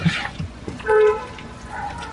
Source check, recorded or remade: remade